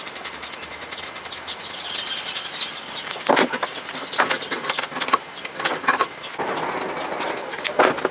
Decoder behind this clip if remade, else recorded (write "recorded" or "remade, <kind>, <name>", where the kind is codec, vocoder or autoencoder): recorded